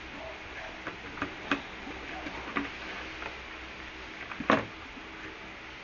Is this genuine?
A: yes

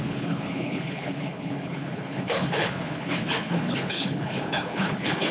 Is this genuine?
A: no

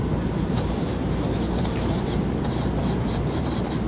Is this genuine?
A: no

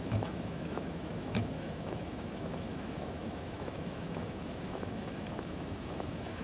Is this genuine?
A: no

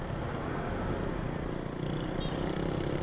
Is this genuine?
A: yes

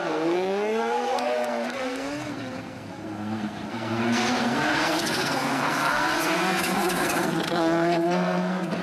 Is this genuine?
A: no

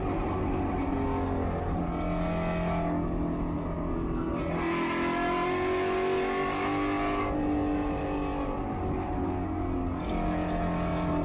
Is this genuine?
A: yes